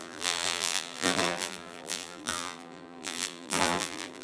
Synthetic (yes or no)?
yes